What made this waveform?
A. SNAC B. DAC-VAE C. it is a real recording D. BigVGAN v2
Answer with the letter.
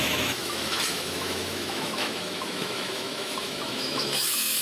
B